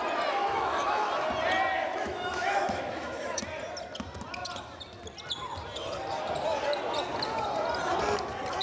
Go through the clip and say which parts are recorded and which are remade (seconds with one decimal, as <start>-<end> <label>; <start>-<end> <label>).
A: 0.0-0.4 recorded; 0.4-1.1 remade; 1.1-1.9 recorded; 1.9-3.4 remade; 3.4-8.6 recorded